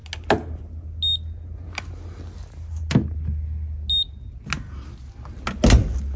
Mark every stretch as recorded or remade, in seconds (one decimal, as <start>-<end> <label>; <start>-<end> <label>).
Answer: 0.0-6.2 recorded